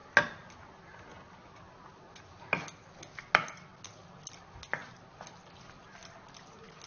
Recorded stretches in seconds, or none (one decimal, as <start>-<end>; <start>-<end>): 0.0-6.9